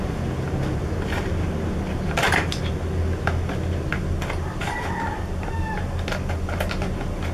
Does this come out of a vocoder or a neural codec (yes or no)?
no